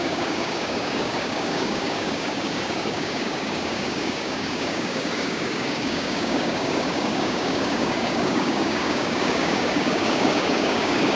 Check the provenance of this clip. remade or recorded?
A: remade